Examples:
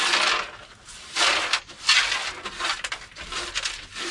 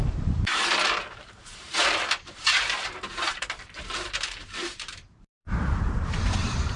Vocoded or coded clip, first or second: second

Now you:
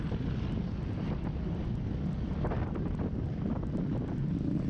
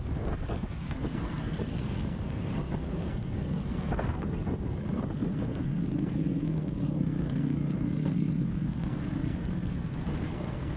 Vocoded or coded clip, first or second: second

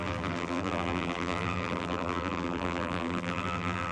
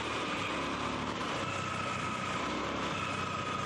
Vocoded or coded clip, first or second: first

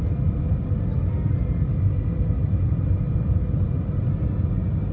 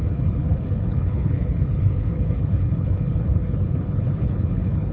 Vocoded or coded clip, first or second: second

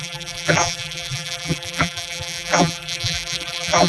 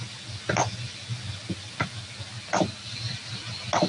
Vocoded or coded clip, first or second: first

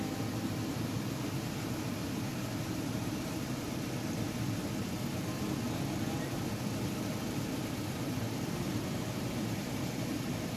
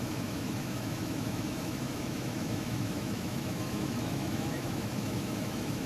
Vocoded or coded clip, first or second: second